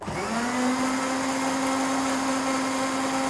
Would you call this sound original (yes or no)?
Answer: yes